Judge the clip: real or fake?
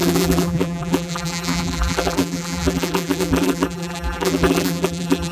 fake